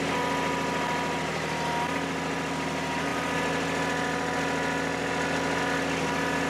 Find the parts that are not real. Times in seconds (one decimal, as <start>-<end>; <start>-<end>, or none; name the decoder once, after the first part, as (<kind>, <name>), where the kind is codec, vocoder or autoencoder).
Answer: none